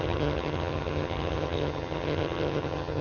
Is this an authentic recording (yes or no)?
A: no